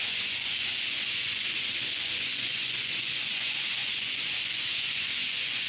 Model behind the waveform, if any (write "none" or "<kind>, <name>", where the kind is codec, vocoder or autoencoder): vocoder, Vocos